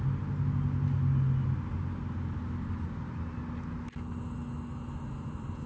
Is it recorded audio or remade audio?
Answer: recorded